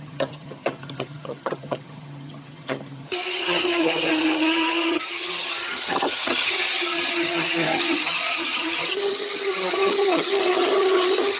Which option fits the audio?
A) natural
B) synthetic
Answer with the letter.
B